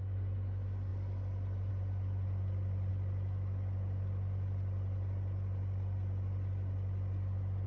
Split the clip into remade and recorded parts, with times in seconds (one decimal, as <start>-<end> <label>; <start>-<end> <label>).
0.0-7.7 recorded